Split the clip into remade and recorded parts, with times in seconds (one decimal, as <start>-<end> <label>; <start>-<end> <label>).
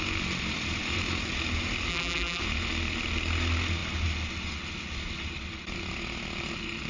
0.0-1.9 recorded; 1.9-2.4 remade; 2.4-6.9 recorded